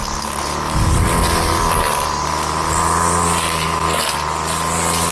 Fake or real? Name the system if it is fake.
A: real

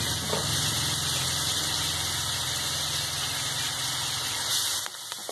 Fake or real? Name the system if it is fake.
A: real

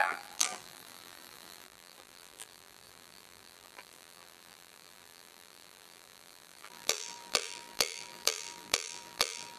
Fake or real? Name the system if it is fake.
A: fake, vocoder, BigVGAN v2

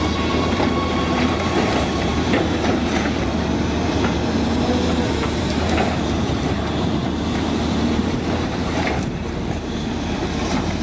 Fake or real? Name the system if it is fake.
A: fake, vocoder, BigVGAN v2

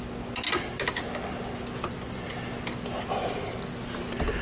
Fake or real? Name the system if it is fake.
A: real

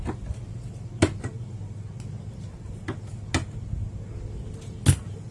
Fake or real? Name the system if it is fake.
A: real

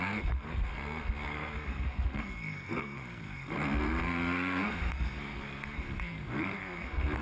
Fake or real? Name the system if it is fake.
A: fake, codec, SNAC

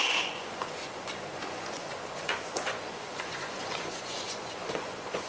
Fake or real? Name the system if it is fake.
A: fake, vocoder, Vocos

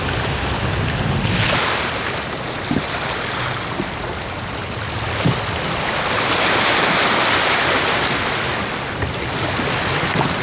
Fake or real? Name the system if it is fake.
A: real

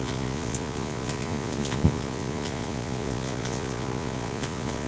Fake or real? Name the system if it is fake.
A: fake, vocoder, Vocos